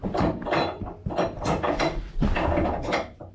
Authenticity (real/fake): real